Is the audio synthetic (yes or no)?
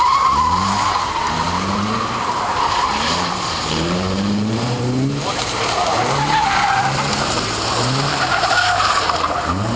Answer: yes